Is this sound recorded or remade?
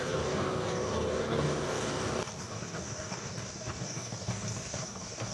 remade